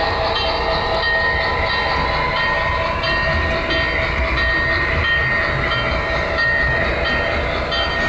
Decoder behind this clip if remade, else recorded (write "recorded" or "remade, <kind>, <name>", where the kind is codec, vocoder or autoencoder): recorded